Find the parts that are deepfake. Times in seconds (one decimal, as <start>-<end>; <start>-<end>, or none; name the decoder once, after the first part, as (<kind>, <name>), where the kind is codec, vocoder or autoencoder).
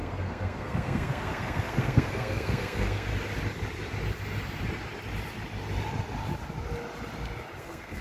0.0-3.1 (codec, SNAC); 7.6-8.0